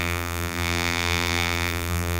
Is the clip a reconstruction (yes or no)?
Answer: yes